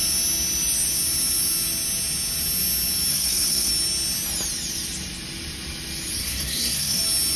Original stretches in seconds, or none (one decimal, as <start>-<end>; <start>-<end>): 0.0-3.1; 3.7-6.2; 7.0-7.4